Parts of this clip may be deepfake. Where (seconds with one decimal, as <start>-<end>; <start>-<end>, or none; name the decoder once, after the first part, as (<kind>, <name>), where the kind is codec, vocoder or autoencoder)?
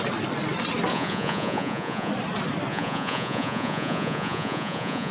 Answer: 0.9-2.1 (vocoder, Vocos); 2.7-5.1